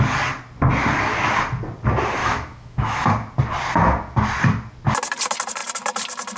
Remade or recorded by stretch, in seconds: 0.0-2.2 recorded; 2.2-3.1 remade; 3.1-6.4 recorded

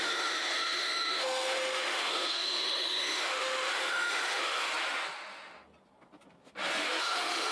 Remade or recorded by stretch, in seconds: 0.0-4.7 remade; 4.7-7.0 recorded; 7.0-7.5 remade

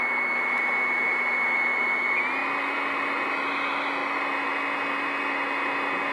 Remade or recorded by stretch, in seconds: 0.0-6.1 recorded